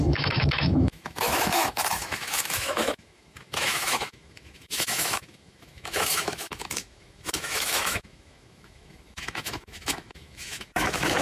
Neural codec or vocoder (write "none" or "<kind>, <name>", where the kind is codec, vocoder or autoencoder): autoencoder, DAC-VAE